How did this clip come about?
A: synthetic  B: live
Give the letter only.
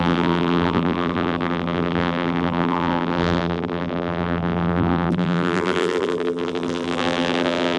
A